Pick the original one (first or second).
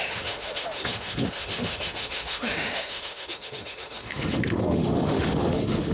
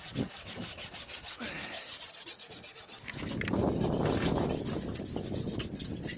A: second